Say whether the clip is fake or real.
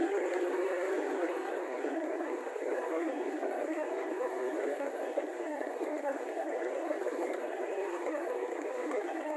fake